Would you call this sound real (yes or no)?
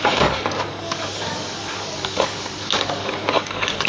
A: no